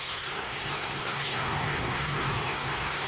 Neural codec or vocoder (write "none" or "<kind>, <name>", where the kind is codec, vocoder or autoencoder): codec, SNAC